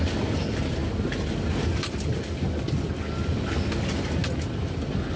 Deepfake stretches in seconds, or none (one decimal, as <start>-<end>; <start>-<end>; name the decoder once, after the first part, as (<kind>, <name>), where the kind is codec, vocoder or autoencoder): none